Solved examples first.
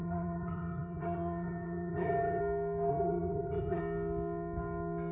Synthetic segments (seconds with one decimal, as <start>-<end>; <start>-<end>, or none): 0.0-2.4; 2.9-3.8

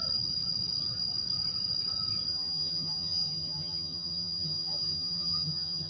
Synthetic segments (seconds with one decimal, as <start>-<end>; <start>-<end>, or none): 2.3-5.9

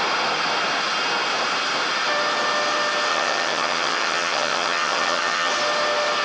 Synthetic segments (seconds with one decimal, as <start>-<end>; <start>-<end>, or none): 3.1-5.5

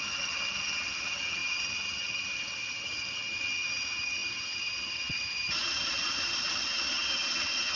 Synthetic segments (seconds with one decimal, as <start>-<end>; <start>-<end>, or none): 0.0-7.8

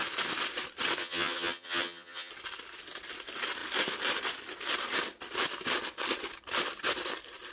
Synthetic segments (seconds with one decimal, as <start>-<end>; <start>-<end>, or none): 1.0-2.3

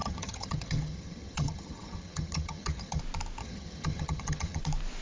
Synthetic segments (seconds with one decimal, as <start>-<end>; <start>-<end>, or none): 0.0-3.0; 3.4-4.6

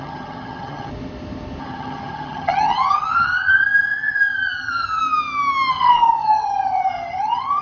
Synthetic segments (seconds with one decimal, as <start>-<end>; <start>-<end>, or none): 0.0-0.9; 1.6-5.0; 5.7-7.6

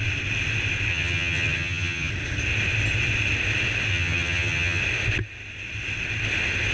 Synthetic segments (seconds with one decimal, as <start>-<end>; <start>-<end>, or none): 0.9-2.1; 3.9-4.8